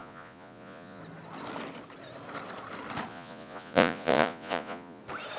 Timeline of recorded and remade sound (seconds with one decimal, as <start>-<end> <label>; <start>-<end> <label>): 0.0-1.0 remade; 1.0-3.1 recorded; 3.1-5.0 remade; 5.0-5.4 recorded